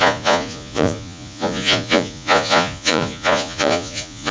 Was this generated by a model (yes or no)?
yes